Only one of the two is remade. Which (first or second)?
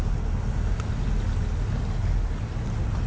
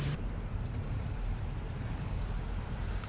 second